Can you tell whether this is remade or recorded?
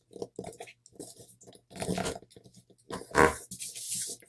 recorded